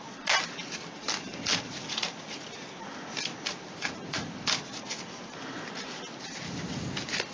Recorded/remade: recorded